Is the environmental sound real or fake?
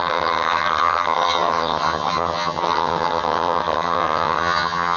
fake